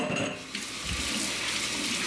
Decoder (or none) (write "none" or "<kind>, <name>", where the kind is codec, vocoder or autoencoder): none